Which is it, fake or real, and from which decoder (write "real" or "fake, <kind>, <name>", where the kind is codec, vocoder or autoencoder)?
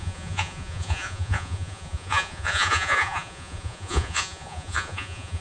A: fake, vocoder, Vocos